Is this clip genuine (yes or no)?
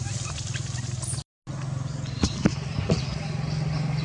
yes